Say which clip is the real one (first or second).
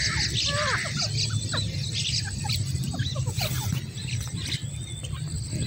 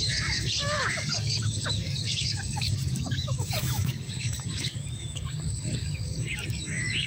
first